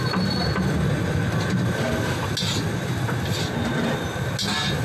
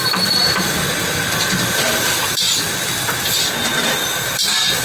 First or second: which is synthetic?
second